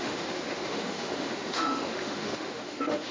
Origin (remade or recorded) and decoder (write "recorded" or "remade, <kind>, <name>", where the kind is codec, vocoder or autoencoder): remade, autoencoder, DAC-VAE